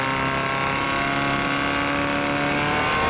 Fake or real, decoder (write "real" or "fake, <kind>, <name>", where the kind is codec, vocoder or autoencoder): real